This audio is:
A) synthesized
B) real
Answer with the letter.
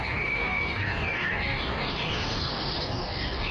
A